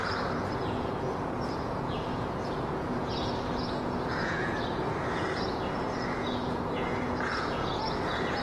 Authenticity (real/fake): fake